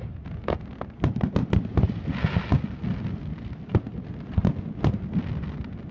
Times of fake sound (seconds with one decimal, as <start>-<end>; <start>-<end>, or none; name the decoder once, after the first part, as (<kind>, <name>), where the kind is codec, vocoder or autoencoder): none